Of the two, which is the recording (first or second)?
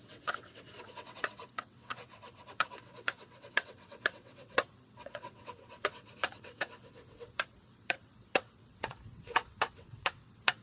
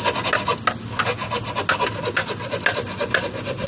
second